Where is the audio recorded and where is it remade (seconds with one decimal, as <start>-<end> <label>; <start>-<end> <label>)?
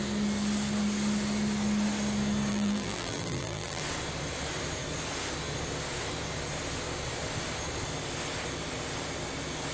0.0-2.5 recorded; 2.5-3.8 remade; 3.8-9.7 recorded